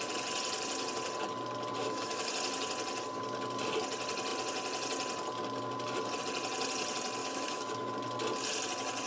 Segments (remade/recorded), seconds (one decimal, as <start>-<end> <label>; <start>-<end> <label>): 0.0-1.8 recorded; 1.8-2.3 remade; 2.3-7.2 recorded; 7.2-7.9 remade; 7.9-9.1 recorded